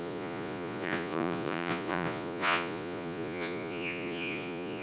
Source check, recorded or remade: remade